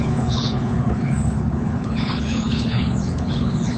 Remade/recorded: remade